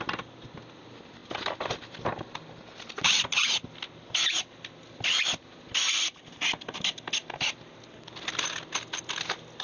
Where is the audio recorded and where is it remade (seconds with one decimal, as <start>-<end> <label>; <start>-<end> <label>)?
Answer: 0.0-9.6 recorded